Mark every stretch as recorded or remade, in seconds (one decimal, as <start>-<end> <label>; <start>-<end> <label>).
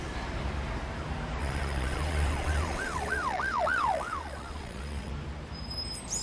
0.0-1.4 recorded; 1.4-5.1 remade; 5.1-6.2 recorded